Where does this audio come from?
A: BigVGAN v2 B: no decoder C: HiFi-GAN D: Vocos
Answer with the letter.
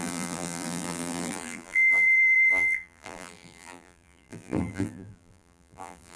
A